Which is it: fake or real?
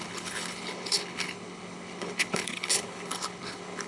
fake